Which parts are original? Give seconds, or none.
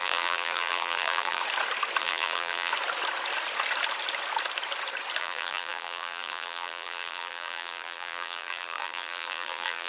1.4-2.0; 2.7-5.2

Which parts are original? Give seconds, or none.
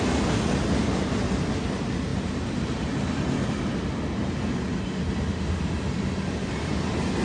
0.0-7.2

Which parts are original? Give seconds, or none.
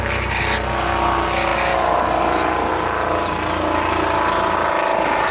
0.0-5.3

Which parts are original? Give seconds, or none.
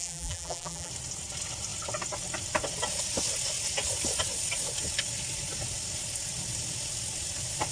0.9-7.7